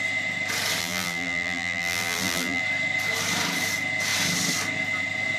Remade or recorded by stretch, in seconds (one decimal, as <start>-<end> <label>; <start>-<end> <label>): 0.0-0.8 recorded; 0.8-2.6 remade; 2.6-5.4 recorded